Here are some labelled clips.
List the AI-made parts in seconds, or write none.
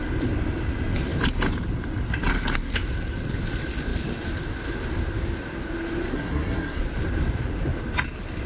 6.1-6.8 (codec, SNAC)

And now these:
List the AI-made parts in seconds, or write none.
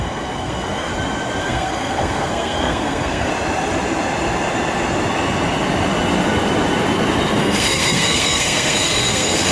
0.0-0.9 (codec, SNAC); 1.4-3.3; 7.4-9.5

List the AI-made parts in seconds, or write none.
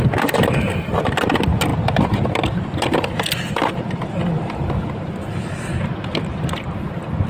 none